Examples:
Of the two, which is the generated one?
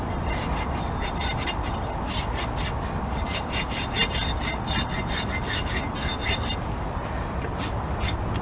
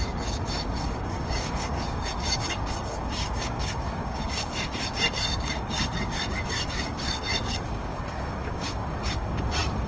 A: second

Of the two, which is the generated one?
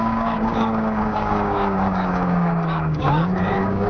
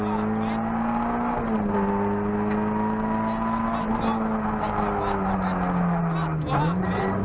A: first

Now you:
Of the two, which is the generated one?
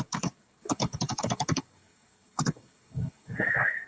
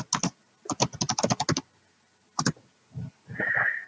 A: first